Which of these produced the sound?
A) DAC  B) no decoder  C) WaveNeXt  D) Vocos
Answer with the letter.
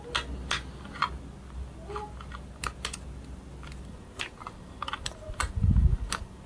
B